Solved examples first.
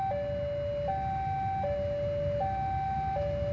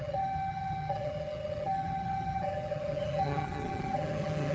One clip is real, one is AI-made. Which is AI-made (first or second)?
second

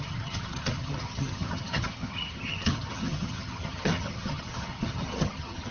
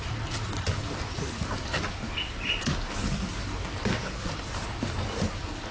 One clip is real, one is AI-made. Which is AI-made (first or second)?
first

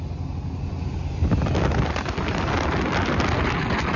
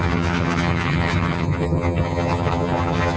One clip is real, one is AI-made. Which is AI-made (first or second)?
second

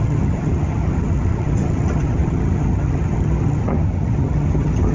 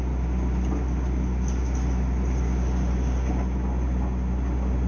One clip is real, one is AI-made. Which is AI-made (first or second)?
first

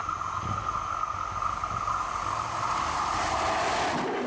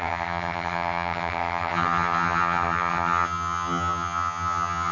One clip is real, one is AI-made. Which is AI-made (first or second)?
second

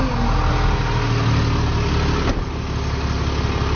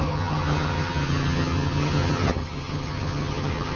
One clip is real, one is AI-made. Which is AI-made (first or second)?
second